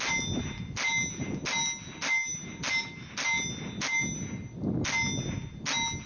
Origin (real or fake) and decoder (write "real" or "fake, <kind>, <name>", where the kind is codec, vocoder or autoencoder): real